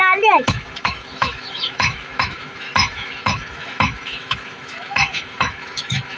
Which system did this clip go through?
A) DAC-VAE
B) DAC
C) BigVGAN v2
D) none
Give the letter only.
A